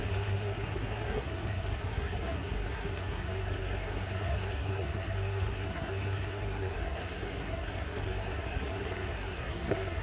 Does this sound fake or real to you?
fake